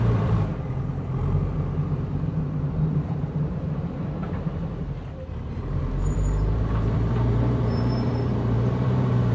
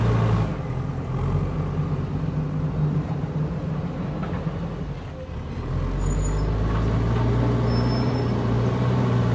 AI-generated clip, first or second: first